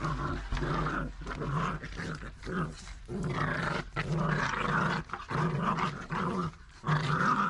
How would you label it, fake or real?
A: real